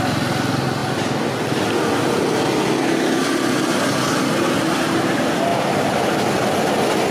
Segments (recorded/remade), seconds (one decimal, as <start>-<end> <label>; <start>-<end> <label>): 0.0-7.1 recorded